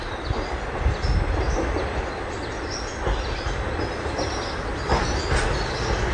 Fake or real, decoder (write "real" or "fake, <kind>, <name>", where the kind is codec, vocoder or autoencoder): real